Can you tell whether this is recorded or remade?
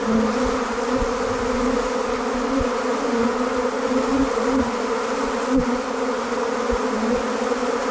recorded